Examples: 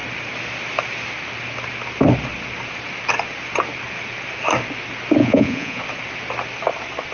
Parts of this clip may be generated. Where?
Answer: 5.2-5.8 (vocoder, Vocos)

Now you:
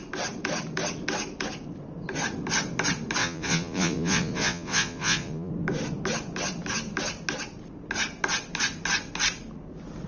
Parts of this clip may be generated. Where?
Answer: 3.2-5.5 (vocoder, Vocos)

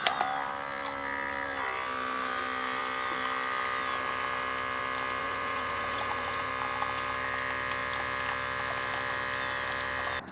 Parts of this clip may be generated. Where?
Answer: 5.2-6.5 (vocoder, Vocos)

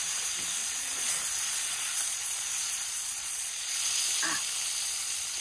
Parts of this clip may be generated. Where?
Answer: 0.6-3.8 (vocoder, Vocos)

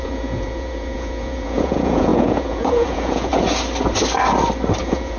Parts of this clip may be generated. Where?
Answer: 0.0-3.3 (vocoder, Vocos); 4.8-5.2

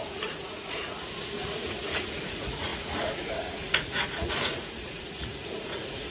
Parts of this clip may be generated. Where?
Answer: 0.0-6.1 (vocoder, Vocos)

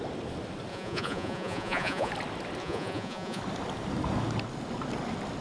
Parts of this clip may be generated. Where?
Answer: 0.7-2.1 (vocoder, Vocos); 2.6-3.4